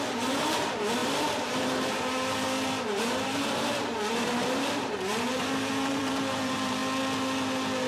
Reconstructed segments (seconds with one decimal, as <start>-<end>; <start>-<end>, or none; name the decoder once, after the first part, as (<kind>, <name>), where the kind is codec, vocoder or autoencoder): 0.0-6.8 (vocoder, BigVGAN v2)